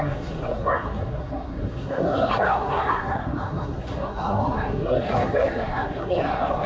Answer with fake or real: fake